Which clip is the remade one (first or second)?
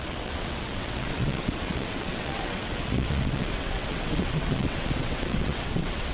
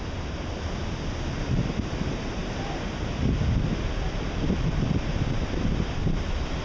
first